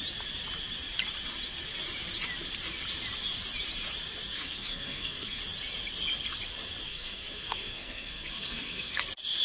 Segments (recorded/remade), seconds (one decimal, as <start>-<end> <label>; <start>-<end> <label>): 0.0-4.3 recorded; 4.3-5.4 remade; 5.4-6.9 recorded; 6.9-9.0 remade; 9.0-9.4 recorded